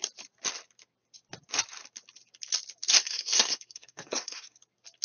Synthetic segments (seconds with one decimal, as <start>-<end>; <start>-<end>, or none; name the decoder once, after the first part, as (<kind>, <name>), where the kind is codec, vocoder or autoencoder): 3.0-4.6 (codec, SNAC)